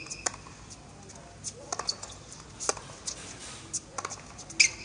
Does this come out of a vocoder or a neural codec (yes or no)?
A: no